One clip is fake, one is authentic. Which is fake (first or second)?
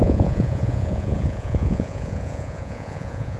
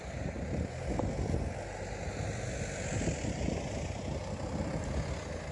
first